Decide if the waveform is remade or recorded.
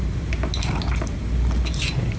recorded